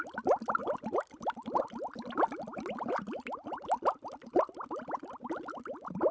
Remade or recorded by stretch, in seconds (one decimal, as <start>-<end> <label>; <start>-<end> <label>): 0.0-6.1 recorded